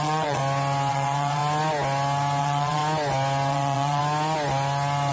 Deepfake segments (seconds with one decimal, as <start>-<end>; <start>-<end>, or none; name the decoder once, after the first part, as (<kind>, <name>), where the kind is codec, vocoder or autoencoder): 0.0-0.4 (vocoder, WaveNeXt); 0.9-1.4; 2.4-2.8; 3.5-4.0